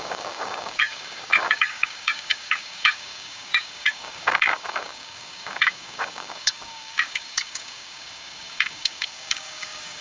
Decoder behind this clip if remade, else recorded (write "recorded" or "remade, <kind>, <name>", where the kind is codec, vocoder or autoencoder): remade, codec, DAC